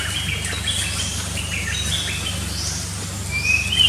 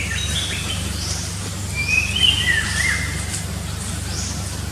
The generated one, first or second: second